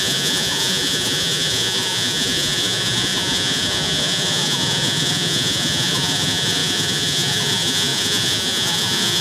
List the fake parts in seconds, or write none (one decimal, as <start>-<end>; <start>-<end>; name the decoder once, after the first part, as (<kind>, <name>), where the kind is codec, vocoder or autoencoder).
0.0-9.2 (vocoder, Vocos)